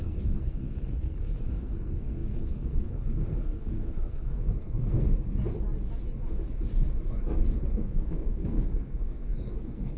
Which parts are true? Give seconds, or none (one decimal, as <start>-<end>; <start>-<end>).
5.1-7.7